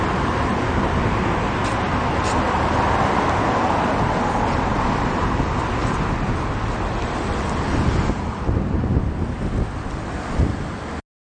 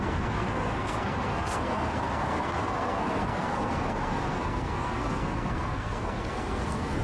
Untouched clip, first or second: first